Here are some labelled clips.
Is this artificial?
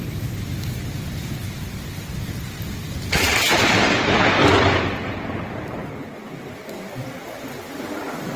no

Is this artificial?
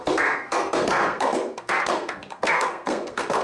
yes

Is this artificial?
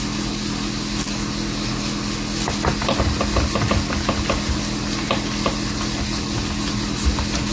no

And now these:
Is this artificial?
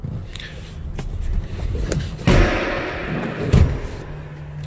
no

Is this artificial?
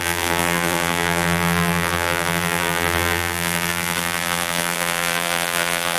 yes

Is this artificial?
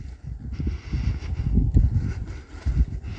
no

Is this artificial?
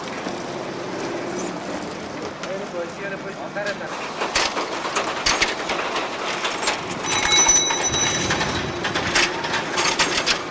no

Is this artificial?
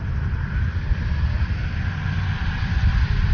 no